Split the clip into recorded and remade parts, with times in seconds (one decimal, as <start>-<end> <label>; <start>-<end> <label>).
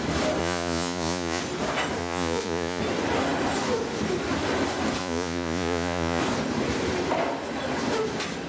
0.0-0.4 recorded; 0.4-1.4 remade; 1.4-2.0 recorded; 2.0-2.8 remade; 2.8-5.0 recorded; 5.0-6.2 remade; 6.2-8.5 recorded